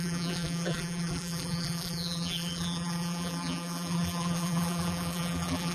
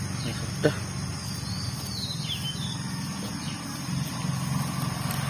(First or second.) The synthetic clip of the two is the first